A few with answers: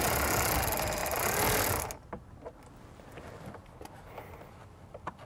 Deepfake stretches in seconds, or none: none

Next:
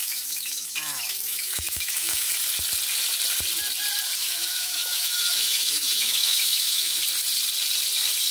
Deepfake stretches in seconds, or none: 0.0-2.3 (autoencoder, DAC-VAE); 4.2-7.0

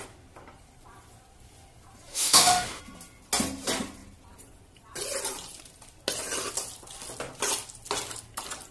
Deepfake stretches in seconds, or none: 2.1-2.8 (autoencoder, DAC-VAE)

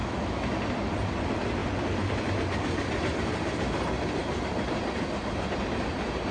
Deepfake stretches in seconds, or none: 0.0-0.6 (autoencoder, DAC-VAE)

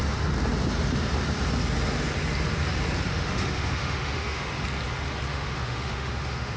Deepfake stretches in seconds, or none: 3.1-4.6 (autoencoder, DAC-VAE); 5.3-6.6

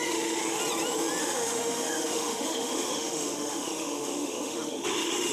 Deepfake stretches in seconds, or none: 0.0-0.6 (autoencoder, DAC-VAE); 1.2-5.3

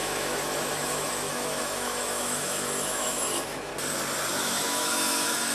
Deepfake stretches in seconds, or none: 0.0-3.7 (autoencoder, DAC-VAE); 4.3-5.5

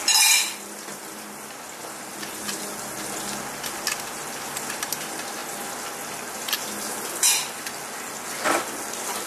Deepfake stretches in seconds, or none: none